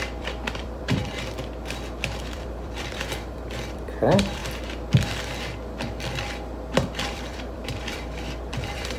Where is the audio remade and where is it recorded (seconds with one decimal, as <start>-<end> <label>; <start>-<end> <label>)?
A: 0.0-1.0 remade; 1.0-2.2 recorded; 2.2-4.4 remade; 4.4-7.1 recorded; 7.1-9.0 remade